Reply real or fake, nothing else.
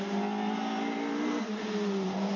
real